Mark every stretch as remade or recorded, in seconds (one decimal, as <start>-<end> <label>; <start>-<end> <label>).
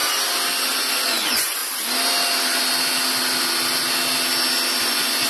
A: 0.0-0.9 recorded; 0.9-1.6 remade; 1.6-4.8 recorded; 4.8-5.3 remade